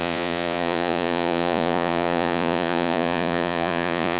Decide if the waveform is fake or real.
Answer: fake